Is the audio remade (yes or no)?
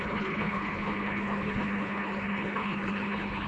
yes